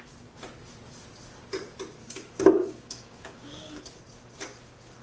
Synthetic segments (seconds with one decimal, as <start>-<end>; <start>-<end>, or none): 2.0-3.8